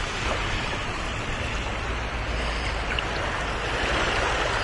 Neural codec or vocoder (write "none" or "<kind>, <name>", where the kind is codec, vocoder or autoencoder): none